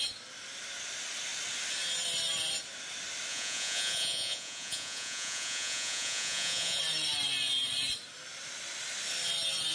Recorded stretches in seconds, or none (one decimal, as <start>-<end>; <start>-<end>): 0.0-3.3; 6.8-9.7